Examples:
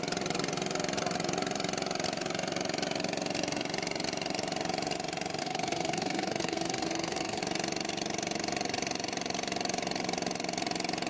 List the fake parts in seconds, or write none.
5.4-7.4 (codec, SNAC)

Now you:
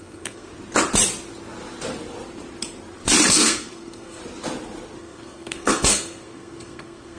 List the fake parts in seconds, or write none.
0.0-0.5 (codec, SNAC); 3.3-4.2; 5.0-7.2

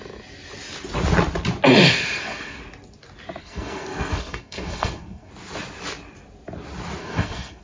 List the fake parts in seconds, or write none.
1.8-2.6 (codec, SNAC); 3.4-5.3; 7.0-7.6

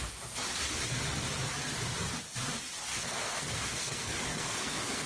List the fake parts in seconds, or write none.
2.9-5.1 (codec, SNAC)